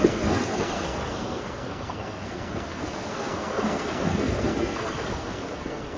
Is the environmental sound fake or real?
fake